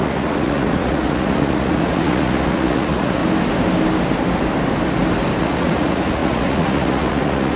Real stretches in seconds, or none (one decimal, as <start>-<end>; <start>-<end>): 3.2-5.4